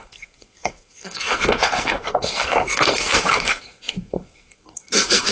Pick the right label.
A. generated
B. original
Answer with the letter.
A